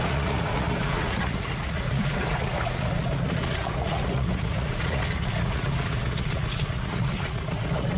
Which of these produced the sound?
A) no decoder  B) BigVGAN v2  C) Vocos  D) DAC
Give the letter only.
C